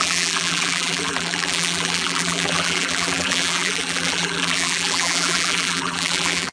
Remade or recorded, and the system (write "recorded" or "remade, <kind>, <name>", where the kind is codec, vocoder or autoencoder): remade, vocoder, BigVGAN v2